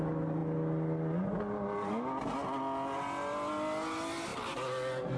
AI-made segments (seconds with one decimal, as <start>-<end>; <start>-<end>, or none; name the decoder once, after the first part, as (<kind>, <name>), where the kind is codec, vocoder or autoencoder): none